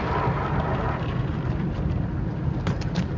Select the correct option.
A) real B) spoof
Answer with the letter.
A